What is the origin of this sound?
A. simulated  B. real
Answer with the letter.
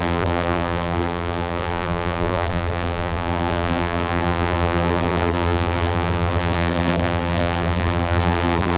A